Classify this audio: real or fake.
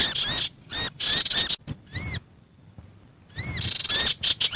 real